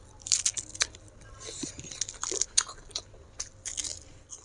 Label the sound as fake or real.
real